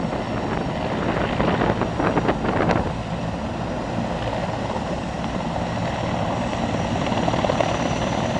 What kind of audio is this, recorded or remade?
recorded